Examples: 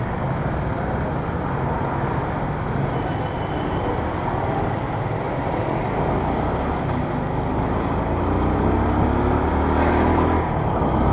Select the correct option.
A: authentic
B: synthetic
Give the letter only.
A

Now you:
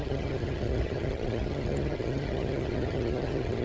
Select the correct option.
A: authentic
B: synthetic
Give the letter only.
B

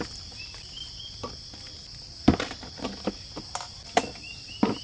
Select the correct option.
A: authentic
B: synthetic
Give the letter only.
A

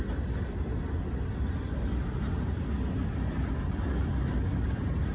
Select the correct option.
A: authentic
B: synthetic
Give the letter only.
A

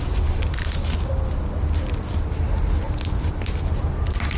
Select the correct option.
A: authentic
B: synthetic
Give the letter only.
A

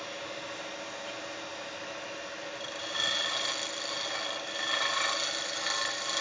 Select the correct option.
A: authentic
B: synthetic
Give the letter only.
A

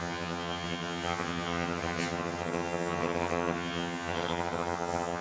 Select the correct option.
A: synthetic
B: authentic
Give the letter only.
A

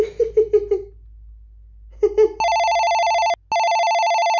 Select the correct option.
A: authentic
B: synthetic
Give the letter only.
A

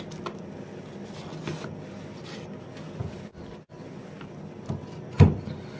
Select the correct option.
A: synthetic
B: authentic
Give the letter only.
B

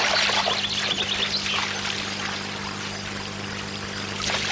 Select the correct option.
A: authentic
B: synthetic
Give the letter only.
A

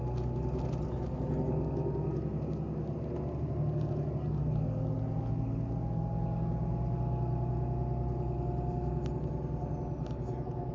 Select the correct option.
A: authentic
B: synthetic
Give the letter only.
A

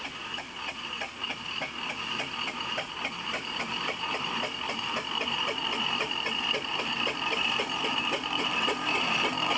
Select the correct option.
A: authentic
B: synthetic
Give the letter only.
A